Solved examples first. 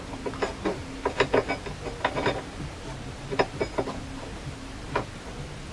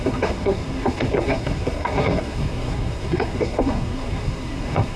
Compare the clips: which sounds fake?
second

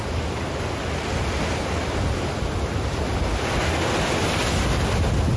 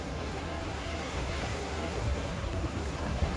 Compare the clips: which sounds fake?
second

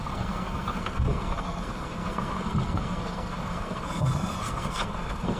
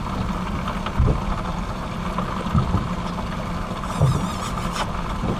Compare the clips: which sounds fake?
first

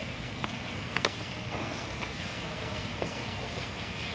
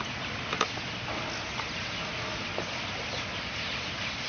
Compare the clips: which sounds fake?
first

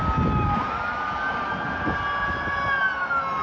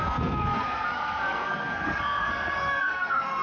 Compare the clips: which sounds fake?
second